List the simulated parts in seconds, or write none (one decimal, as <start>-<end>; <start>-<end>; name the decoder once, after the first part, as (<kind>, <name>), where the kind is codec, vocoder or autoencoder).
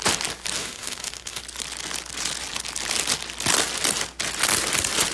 0.6-1.4 (autoencoder, DAC-VAE)